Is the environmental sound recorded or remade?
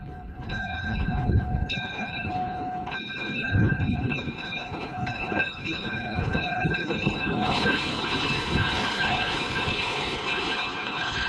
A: remade